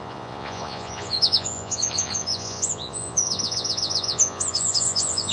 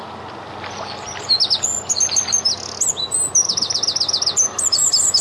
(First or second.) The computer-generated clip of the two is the first